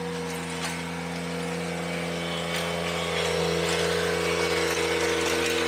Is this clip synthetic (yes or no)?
no